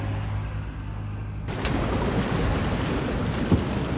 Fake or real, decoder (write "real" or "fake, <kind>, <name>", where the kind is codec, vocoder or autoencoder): real